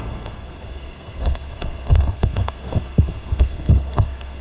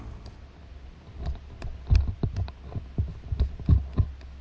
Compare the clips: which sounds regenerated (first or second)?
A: first